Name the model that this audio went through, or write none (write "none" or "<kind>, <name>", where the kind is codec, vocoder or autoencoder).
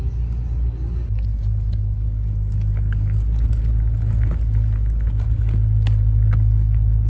none